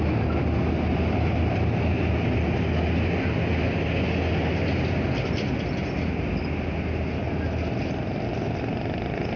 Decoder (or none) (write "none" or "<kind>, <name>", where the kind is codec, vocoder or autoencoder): none